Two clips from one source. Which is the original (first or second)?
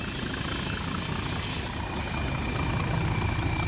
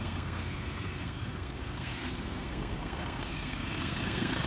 first